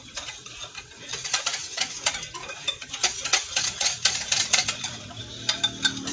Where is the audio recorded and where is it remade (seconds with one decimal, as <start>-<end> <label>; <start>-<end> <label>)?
0.0-5.2 remade; 5.2-6.1 recorded